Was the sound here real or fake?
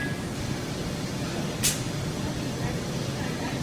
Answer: real